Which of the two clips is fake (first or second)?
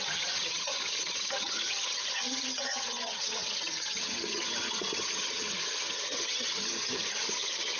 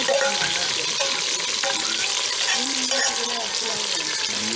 first